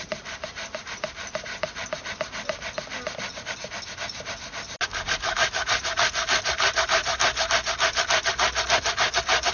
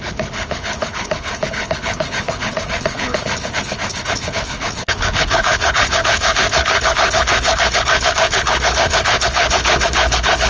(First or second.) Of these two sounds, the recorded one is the first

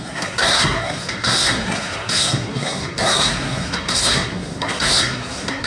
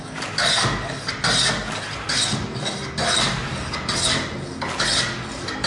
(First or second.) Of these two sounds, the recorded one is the second